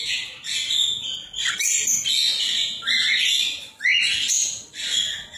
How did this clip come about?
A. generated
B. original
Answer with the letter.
B